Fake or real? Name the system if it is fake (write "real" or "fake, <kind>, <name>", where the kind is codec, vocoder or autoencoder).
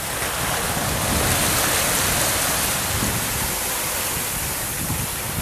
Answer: real